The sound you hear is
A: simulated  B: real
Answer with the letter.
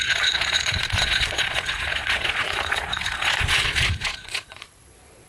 A